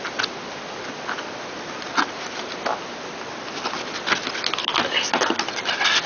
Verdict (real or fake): real